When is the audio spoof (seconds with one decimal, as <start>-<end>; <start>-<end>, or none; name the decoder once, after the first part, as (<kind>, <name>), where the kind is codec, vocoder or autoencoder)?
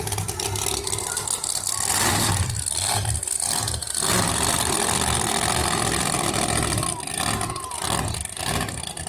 none